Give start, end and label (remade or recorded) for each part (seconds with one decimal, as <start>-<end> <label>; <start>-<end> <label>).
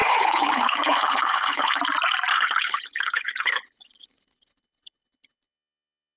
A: 0.0-1.8 remade; 1.8-2.3 recorded; 2.3-6.2 remade